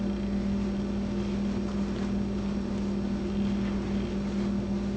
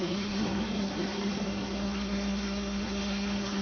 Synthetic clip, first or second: second